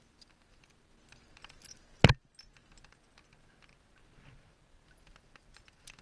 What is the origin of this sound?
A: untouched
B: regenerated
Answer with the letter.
A